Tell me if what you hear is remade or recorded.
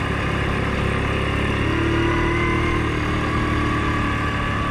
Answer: recorded